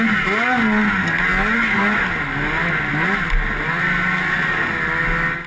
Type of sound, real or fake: real